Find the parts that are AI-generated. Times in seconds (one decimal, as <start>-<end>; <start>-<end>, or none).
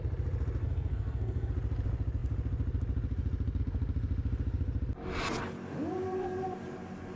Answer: 0.6-1.5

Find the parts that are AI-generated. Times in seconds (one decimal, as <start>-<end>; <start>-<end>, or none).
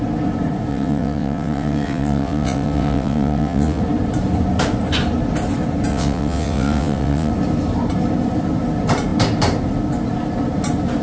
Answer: 0.7-3.8; 5.9-7.3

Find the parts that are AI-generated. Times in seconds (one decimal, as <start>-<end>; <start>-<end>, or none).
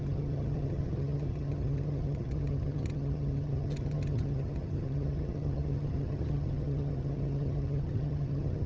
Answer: 0.0-8.7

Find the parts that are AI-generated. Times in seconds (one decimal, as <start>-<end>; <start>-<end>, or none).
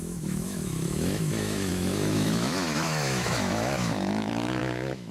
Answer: 0.0-5.1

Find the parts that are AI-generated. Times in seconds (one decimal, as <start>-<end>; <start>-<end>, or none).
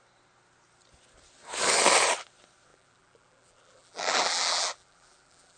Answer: 2.7-5.6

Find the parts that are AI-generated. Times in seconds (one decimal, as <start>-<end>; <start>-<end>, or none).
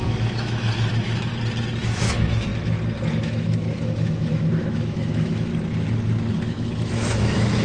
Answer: 0.0-1.3; 1.8-2.5; 3.1-5.5; 6.3-7.6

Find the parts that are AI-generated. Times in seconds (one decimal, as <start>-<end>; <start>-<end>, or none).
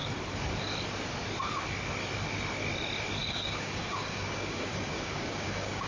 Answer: 3.2-5.9